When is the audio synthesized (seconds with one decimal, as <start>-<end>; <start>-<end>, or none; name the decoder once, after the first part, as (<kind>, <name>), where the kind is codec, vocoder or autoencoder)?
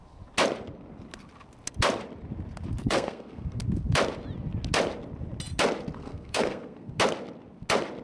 2.8-3.6 (codec, SNAC); 6.0-7.0